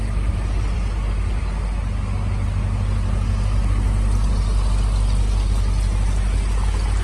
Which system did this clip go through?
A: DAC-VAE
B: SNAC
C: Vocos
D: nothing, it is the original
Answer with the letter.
D